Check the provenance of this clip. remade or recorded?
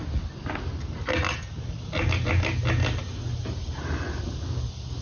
recorded